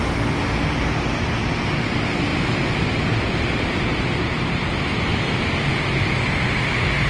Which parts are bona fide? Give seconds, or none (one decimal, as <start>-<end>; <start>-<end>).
0.0-2.3; 4.7-7.1

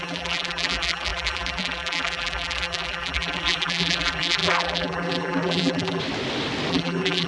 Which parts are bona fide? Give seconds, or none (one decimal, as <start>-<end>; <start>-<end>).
6.0-6.7

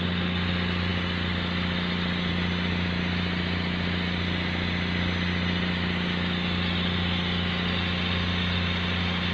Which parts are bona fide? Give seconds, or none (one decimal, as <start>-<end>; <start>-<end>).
0.0-9.3

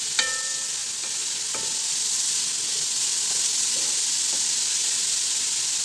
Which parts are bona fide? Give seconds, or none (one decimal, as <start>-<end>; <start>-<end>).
0.8-4.1

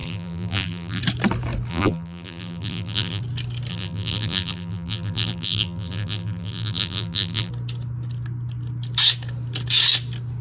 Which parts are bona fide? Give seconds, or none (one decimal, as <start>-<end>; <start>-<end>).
1.0-1.7; 3.2-3.7; 7.5-10.4